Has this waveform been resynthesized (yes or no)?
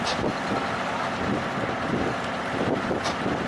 no